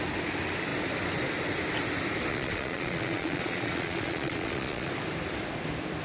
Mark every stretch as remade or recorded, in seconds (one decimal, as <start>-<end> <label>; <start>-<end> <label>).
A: 0.0-2.3 recorded; 2.3-4.9 remade; 4.9-6.0 recorded

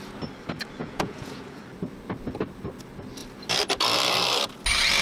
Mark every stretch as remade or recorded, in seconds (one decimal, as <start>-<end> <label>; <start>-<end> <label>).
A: 0.0-0.8 recorded; 0.8-1.6 remade; 1.6-5.0 recorded